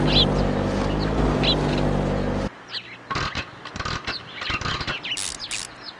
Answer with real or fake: real